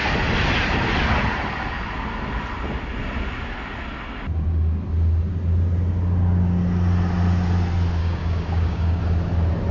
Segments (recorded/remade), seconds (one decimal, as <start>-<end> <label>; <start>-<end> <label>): 0.0-8.0 recorded; 8.0-9.0 remade; 9.0-9.7 recorded